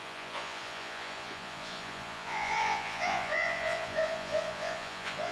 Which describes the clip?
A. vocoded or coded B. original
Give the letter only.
A